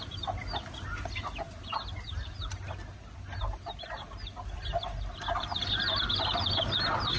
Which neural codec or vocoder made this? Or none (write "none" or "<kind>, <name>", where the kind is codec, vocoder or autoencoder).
none